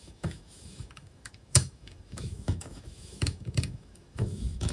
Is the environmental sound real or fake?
fake